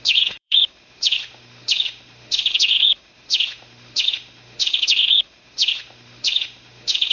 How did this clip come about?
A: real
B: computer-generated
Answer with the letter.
B